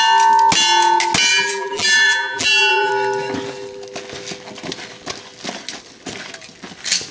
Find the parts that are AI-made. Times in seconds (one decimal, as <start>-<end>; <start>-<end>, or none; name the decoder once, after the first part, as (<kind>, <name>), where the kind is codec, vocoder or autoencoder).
1.3-2.9 (vocoder, BigVGAN v2)